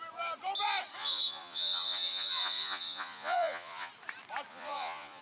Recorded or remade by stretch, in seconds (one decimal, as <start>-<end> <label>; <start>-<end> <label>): 0.0-1.0 recorded; 1.0-3.9 remade; 3.9-4.5 recorded; 4.5-5.2 remade